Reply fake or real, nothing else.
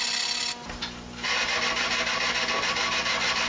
real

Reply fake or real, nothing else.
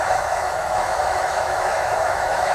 fake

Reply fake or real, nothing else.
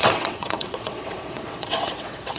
fake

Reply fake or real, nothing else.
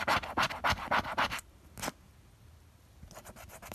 real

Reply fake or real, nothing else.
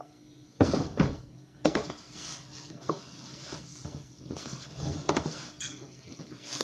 fake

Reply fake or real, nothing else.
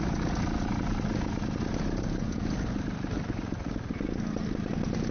real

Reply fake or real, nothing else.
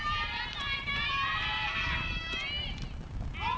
real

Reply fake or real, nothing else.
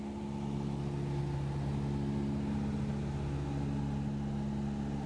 real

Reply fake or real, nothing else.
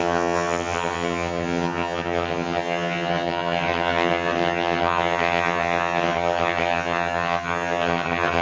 fake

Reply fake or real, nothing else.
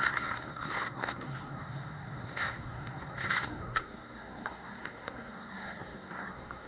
fake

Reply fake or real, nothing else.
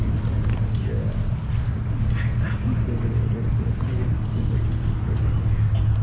real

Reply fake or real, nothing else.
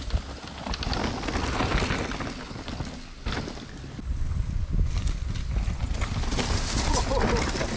real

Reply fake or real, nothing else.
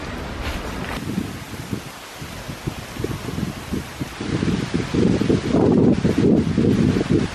real